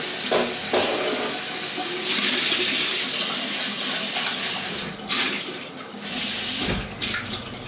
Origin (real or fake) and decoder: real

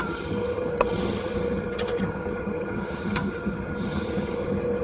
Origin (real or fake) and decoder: fake, vocoder, HiFi-GAN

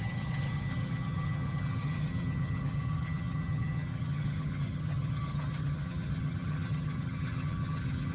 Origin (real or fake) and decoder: fake, vocoder, HiFi-GAN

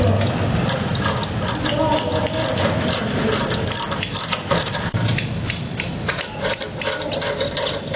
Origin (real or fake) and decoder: real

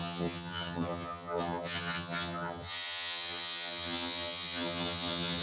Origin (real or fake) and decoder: fake, vocoder, HiFi-GAN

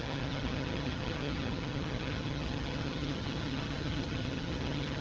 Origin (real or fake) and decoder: fake, vocoder, HiFi-GAN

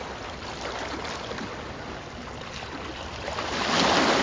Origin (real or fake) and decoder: real